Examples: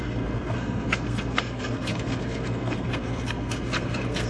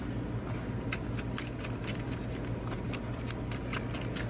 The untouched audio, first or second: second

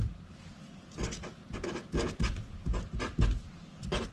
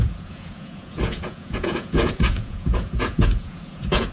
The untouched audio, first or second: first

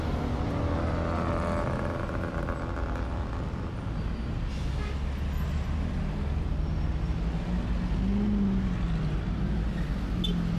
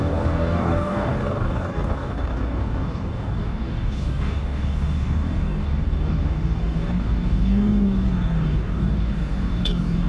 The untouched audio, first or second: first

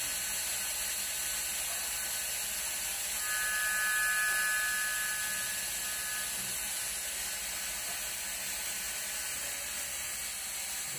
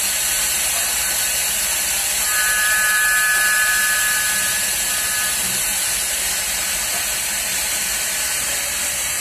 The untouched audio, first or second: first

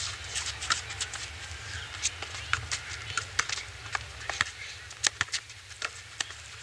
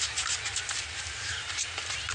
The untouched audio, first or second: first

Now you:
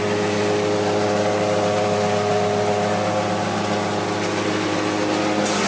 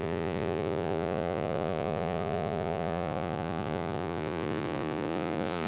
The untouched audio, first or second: first